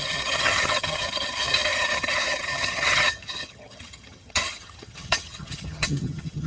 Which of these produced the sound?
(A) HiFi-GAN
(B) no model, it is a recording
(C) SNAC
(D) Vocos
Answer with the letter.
A